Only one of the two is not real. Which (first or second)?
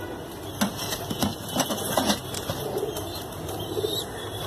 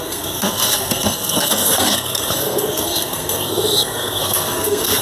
second